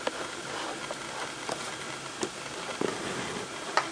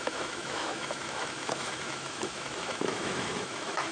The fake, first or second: second